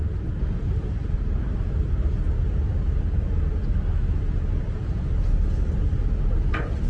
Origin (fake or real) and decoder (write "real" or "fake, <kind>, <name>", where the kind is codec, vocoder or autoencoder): real